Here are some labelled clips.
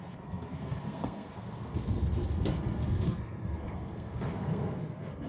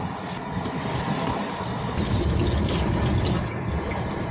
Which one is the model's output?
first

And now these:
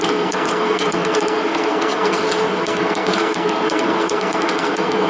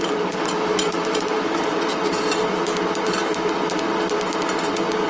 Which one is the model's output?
first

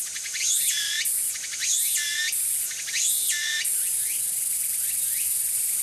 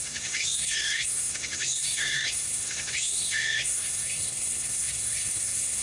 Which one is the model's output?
second